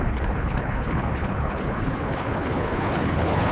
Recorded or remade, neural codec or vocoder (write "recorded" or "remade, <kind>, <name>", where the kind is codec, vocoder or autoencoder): remade, codec, HILCodec